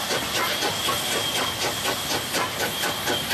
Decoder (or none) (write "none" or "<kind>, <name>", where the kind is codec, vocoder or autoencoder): none